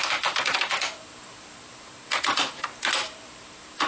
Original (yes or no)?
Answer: no